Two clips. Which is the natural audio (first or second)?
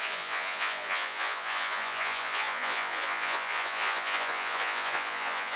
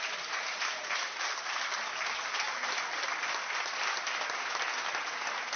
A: second